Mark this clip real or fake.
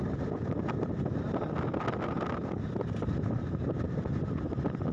real